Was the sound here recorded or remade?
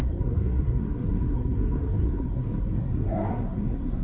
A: remade